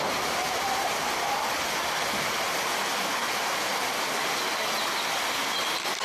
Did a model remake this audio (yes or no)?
no